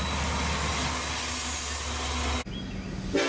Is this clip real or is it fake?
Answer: real